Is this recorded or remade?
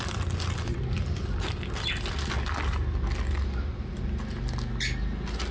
recorded